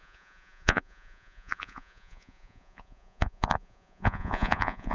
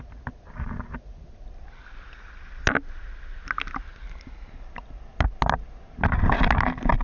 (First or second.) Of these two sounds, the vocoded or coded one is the first